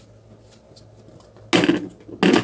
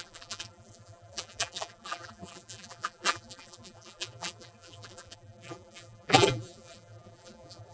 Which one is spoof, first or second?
second